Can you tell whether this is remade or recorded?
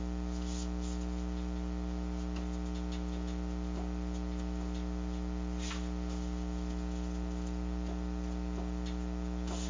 recorded